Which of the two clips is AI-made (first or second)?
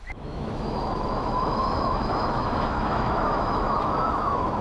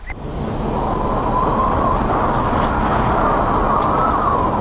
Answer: first